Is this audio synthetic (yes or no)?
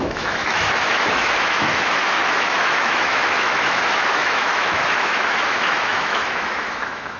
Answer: yes